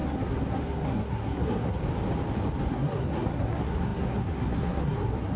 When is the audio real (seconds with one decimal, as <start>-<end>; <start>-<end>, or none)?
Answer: 1.8-2.7